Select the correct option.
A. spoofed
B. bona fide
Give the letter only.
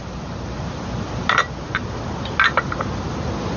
B